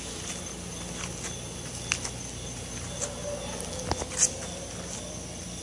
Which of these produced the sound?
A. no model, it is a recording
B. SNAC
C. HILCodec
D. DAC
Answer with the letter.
A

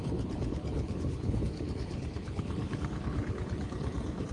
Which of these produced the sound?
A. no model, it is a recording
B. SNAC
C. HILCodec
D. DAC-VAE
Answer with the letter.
C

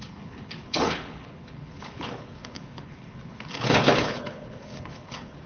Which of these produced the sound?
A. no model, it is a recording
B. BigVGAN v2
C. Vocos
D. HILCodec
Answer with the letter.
D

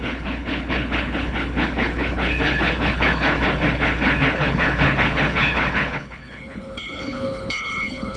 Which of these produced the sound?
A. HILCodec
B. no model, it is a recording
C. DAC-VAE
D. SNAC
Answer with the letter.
A